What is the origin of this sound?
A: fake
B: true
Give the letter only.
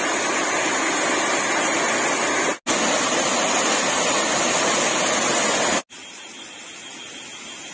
B